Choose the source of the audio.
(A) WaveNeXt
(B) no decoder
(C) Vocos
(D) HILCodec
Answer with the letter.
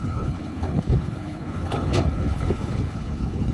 D